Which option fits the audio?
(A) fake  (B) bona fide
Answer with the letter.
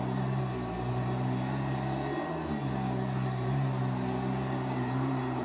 B